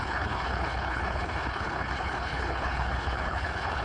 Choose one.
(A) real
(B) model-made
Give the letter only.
B